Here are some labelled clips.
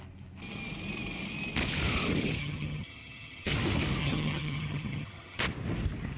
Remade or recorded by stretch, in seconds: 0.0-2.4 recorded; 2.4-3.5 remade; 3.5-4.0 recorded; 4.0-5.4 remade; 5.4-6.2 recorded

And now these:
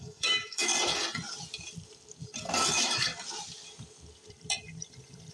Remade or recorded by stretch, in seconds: 0.0-0.7 remade; 0.7-2.7 recorded; 2.7-3.1 remade; 3.1-5.3 recorded